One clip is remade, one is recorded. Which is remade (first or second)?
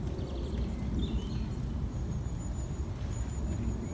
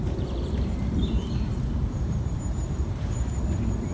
second